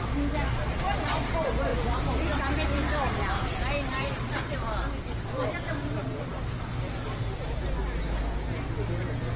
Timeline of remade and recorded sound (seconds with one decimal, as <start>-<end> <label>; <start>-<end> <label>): 0.0-9.4 recorded